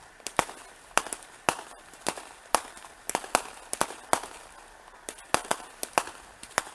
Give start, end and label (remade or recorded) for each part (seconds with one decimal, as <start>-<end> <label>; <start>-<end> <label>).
0.0-6.7 recorded